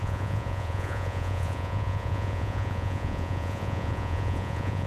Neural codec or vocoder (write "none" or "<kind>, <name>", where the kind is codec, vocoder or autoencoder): vocoder, Vocos